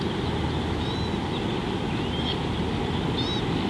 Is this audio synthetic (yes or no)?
no